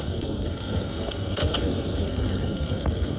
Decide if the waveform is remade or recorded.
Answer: remade